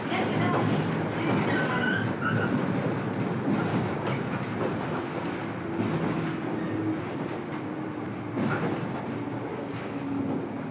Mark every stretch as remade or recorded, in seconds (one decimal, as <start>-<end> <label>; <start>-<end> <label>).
0.0-3.7 recorded; 3.7-4.2 remade; 4.2-9.5 recorded; 9.5-10.0 remade; 10.0-10.7 recorded